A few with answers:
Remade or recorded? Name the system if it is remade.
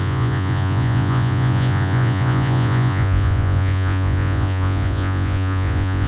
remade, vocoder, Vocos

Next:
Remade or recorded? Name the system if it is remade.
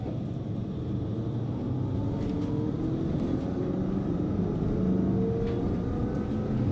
recorded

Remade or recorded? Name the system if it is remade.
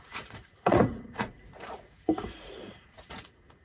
remade, vocoder, Vocos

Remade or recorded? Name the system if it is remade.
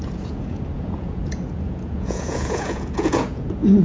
remade, vocoder, Vocos